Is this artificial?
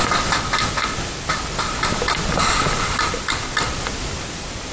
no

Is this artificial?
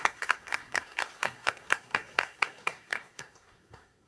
yes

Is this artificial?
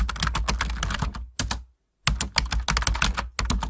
no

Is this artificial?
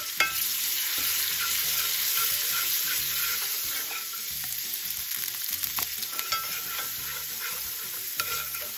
yes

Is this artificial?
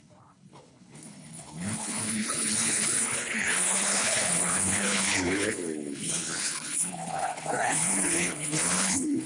yes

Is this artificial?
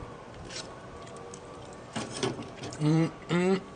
yes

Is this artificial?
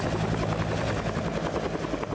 no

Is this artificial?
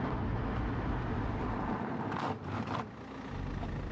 no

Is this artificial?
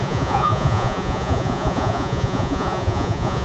yes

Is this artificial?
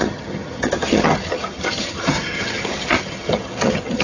yes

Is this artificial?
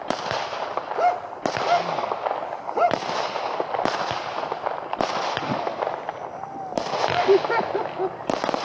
no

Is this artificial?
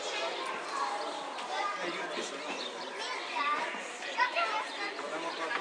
no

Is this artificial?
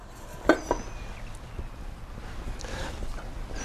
no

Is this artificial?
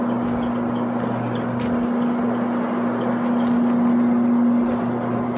no